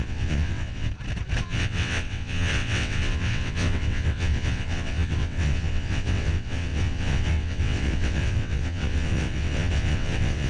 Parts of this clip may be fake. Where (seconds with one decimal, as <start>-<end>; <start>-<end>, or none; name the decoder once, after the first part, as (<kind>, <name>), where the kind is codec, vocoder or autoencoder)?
0.0-0.9 (vocoder, WaveNeXt); 1.4-10.5